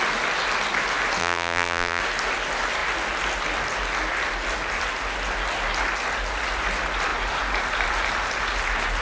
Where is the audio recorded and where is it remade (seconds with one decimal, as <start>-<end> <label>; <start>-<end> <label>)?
0.0-1.2 recorded; 1.2-2.0 remade; 2.0-9.0 recorded